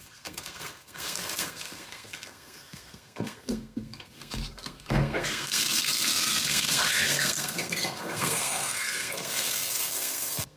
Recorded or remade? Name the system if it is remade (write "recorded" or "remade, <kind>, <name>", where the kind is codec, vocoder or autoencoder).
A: remade, codec, SNAC